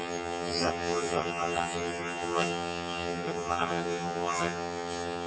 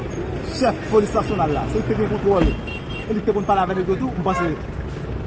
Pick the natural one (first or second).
second